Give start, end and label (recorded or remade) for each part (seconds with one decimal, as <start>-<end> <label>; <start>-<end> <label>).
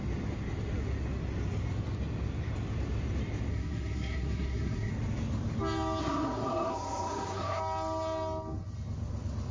0.0-3.5 recorded; 3.5-4.9 remade; 4.9-6.0 recorded; 6.0-7.6 remade; 7.6-9.5 recorded